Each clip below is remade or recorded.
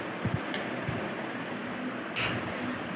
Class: recorded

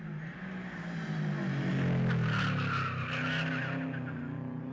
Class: recorded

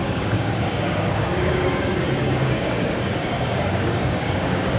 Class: remade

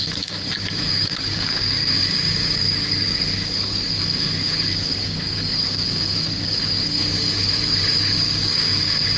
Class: remade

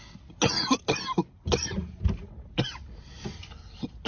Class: recorded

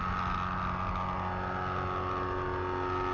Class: recorded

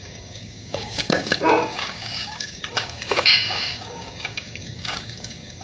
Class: remade